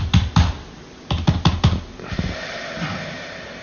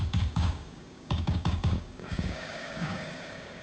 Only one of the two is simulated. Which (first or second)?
second